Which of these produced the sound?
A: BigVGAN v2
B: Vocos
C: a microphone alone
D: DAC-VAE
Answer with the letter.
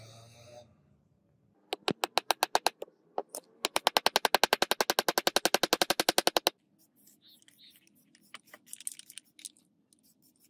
C